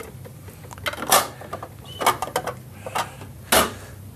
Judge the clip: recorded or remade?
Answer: recorded